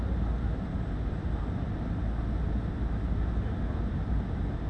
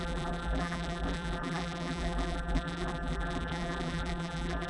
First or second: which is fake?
second